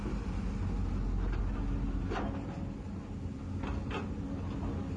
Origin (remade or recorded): recorded